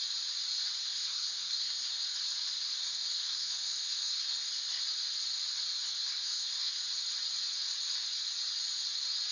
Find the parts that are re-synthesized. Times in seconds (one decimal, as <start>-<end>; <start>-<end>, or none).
0.9-2.0; 2.8-4.8; 6.0-6.8